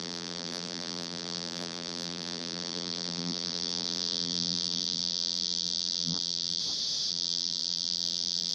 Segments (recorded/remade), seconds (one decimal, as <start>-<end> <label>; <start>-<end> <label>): 0.0-6.6 remade; 6.6-7.1 recorded; 7.1-8.5 remade